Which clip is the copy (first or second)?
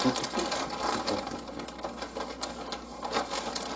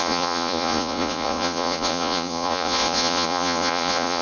second